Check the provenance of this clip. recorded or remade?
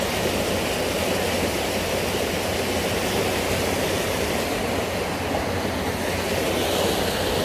recorded